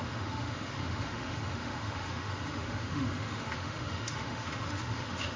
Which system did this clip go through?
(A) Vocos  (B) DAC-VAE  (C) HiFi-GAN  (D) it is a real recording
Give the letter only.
B